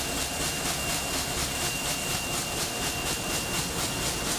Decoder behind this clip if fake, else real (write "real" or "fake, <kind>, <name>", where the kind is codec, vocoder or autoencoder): fake, vocoder, BigVGAN v2